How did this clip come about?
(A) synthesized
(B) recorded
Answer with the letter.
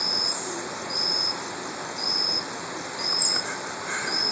B